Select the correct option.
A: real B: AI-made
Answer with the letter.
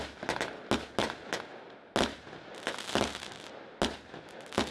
A